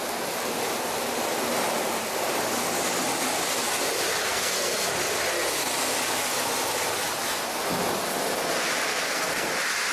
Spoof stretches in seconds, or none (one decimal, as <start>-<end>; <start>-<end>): 4.2-4.9; 8.9-9.5